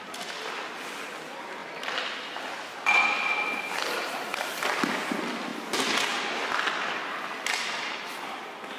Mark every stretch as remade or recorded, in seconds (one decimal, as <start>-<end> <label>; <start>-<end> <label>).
0.0-8.8 recorded